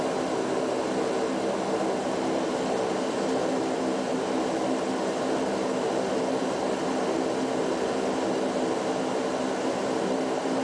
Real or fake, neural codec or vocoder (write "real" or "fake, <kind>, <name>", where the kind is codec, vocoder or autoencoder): real